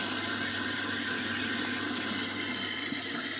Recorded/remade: recorded